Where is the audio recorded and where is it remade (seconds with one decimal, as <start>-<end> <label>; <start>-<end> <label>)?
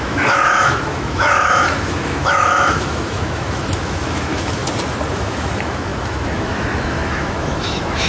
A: 0.0-4.6 remade; 4.6-5.1 recorded; 5.1-8.1 remade